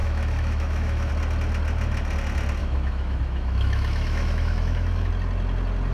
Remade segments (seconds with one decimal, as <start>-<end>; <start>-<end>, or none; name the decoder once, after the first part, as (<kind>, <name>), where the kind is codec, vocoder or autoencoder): 0.0-1.1 (autoencoder, DAC-VAE); 2.6-5.1